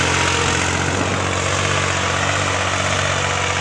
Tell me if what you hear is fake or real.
real